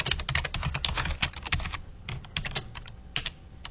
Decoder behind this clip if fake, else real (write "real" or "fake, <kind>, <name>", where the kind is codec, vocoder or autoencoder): real